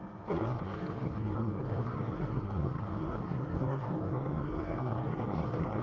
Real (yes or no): no